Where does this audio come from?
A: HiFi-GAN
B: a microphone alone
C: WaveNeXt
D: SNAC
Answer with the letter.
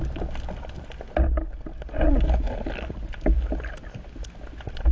B